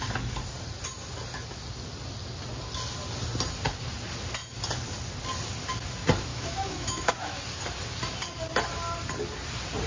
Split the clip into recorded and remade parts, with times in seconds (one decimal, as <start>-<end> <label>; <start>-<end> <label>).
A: 0.0-6.3 recorded; 6.3-7.4 remade; 7.4-9.9 recorded